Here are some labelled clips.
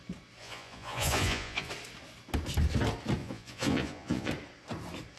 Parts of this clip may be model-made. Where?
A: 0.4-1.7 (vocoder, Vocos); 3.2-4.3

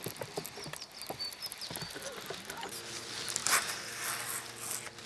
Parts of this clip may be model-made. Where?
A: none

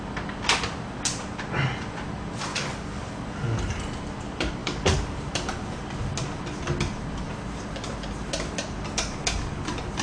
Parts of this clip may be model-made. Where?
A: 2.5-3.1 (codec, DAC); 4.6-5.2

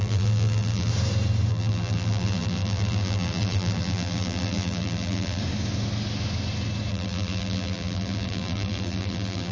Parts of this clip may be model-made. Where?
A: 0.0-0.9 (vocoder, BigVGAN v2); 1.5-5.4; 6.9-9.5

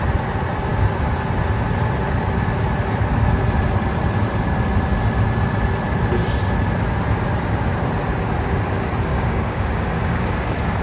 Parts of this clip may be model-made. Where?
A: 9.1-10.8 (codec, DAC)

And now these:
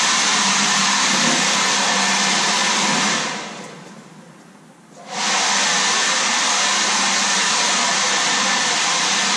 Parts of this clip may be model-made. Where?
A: 0.0-2.6 (vocoder, BigVGAN v2); 6.8-9.4

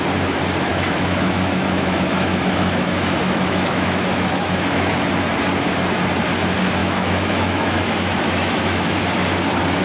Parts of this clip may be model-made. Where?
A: 0.7-4.9 (autoencoder, DAC-VAE); 6.8-9.0

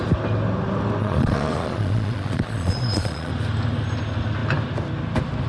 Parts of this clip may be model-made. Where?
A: 1.0-3.3 (vocoder, Vocos)